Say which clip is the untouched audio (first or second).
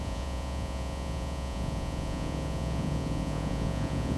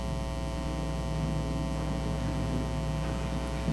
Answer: second